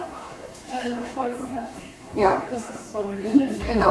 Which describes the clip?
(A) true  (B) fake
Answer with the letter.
B